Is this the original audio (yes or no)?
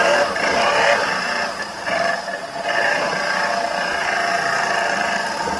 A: yes